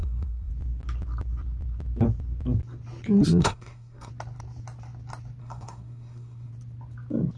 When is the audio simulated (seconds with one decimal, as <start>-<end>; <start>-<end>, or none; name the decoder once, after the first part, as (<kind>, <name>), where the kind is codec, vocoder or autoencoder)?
0.0-0.5 (codec, SNAC); 3.4-4.1; 5.4-6.5